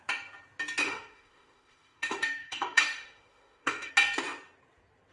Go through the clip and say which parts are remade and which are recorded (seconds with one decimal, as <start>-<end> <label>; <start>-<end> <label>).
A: 0.0-0.8 recorded; 0.8-3.9 remade; 3.9-5.1 recorded